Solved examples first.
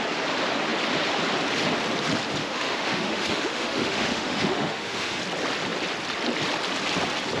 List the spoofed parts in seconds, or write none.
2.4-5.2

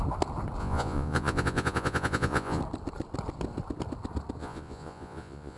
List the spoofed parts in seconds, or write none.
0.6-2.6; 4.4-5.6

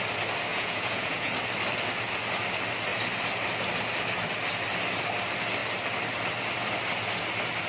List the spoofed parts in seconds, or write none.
0.5-1.3

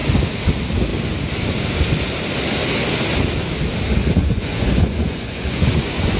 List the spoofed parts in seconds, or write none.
4.2-6.2

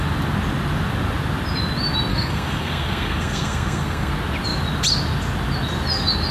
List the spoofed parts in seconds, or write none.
2.1-4.1

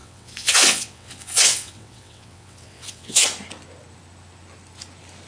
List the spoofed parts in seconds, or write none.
0.0-3.2

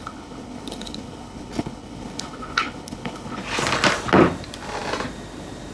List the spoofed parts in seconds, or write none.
0.0-3.4